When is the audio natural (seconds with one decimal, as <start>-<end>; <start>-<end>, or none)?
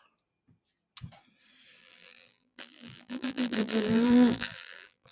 0.0-1.8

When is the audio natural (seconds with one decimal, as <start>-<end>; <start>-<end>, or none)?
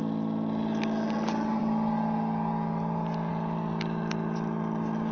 0.0-5.1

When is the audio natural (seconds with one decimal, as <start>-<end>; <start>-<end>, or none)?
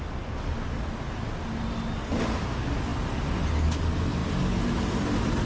0.0-5.5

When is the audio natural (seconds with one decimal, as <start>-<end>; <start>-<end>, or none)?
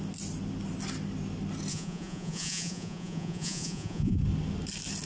0.0-1.7; 4.2-5.1